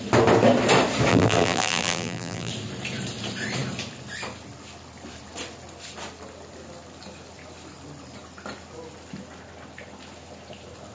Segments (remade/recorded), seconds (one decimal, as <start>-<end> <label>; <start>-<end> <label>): 0.0-1.1 recorded; 1.1-2.5 remade; 2.5-10.9 recorded